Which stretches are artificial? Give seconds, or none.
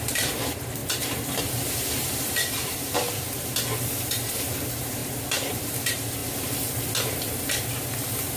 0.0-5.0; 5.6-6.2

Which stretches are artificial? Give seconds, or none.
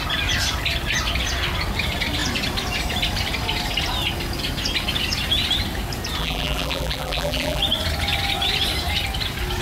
6.2-7.6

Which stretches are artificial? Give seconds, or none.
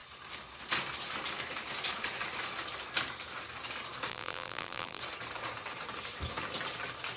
4.1-5.0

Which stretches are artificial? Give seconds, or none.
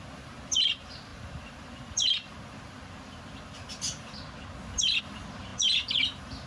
none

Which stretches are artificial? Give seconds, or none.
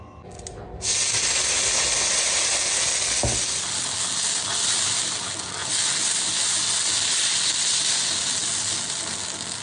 none